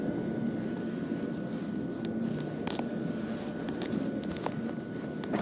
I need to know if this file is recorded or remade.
recorded